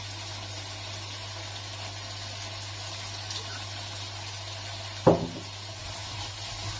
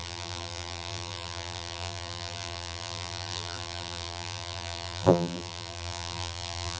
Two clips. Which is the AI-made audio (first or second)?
second